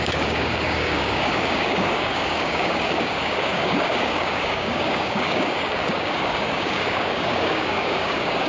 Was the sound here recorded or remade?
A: remade